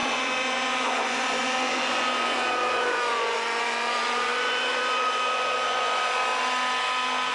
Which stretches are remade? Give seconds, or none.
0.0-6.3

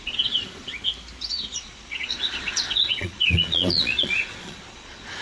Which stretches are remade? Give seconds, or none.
0.0-0.7; 1.3-5.2

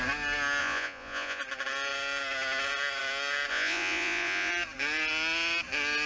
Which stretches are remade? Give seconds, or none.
0.6-1.4; 3.5-4.5

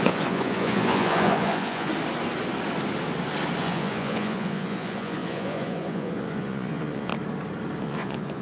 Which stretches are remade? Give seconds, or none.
0.0-1.9; 3.6-7.1; 7.8-8.4

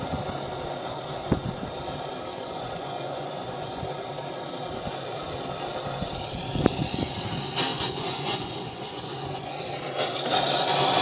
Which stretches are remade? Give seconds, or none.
2.3-3.8; 7.7-9.7

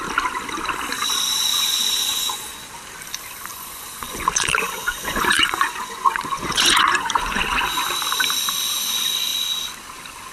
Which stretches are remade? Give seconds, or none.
1.5-2.7; 3.5-7.4